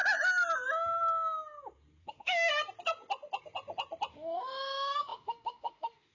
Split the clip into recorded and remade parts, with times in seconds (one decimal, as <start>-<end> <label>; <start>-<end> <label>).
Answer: 0.0-2.0 recorded; 2.0-2.5 remade; 2.5-4.1 recorded; 4.1-6.1 remade